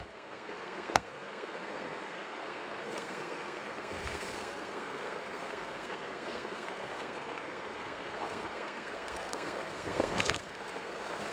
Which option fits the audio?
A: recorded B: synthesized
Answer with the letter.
B